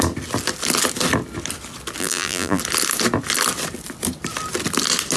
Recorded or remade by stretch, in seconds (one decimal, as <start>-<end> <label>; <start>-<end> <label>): 0.0-2.0 recorded; 2.0-2.6 remade; 2.6-5.2 recorded